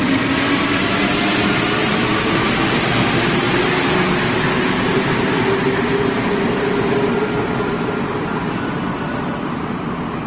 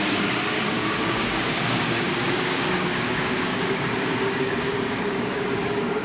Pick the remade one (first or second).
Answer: second